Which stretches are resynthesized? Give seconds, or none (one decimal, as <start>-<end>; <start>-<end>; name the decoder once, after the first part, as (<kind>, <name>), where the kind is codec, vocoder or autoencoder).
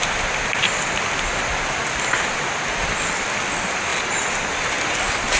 none